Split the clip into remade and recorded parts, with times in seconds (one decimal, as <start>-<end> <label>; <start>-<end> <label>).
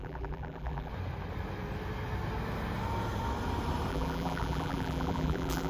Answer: 0.0-0.9 remade; 0.9-3.9 recorded; 3.9-5.7 remade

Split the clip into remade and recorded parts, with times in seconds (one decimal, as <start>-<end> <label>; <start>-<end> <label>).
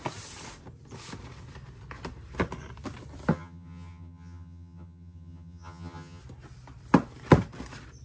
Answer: 0.0-3.3 recorded; 3.3-6.2 remade; 6.2-8.0 recorded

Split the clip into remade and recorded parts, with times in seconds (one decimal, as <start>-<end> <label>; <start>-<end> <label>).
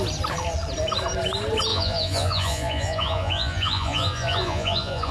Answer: 0.0-1.7 recorded; 1.7-5.1 remade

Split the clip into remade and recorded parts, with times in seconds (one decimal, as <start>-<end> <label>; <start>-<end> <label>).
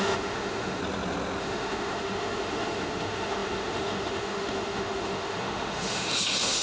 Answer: 0.0-0.8 remade; 0.8-1.4 recorded; 1.4-6.6 remade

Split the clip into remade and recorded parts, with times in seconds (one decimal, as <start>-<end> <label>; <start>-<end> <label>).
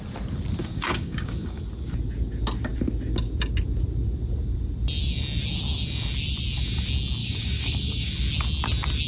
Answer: 0.0-0.6 recorded; 0.6-1.6 remade; 1.6-7.2 recorded; 7.2-8.1 remade; 8.1-9.1 recorded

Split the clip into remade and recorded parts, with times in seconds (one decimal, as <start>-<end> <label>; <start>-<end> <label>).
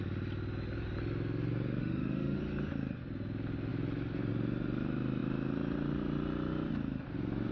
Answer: 0.0-1.8 recorded; 1.8-2.4 remade; 2.4-7.5 recorded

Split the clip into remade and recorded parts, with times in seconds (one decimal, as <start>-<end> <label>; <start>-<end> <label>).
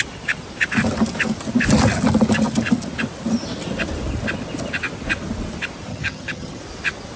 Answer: 0.0-5.9 recorded; 5.9-6.6 remade; 6.6-7.2 recorded